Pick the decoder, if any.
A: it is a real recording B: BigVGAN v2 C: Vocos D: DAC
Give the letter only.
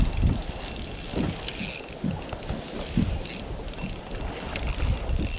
A